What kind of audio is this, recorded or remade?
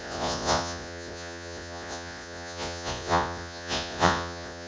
remade